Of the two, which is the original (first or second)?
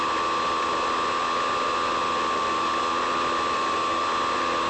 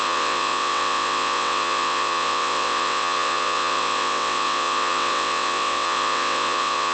first